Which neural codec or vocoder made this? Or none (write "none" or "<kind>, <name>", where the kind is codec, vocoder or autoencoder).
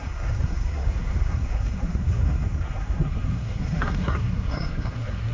codec, SNAC